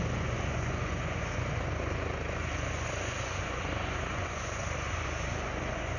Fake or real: fake